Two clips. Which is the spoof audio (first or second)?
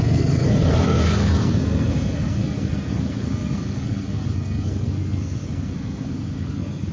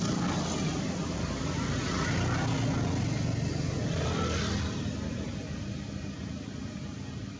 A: first